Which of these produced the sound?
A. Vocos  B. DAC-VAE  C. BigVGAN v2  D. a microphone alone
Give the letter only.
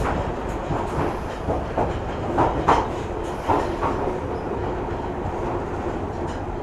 D